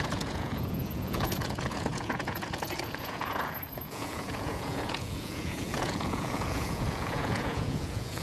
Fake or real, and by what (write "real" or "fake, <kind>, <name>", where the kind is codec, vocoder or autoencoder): fake, vocoder, Vocos